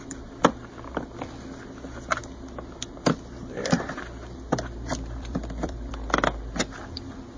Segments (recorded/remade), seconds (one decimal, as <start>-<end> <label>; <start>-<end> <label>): 0.0-2.2 recorded; 2.2-5.9 remade; 5.9-7.4 recorded